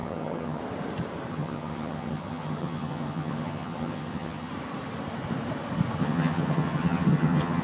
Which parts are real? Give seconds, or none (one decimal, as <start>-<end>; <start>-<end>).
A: 0.6-1.3; 4.5-6.0